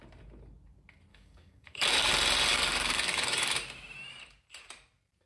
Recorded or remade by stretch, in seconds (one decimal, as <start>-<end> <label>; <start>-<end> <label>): 0.0-1.1 recorded; 1.1-2.1 remade; 2.1-2.5 recorded; 2.5-3.5 remade; 3.5-5.3 recorded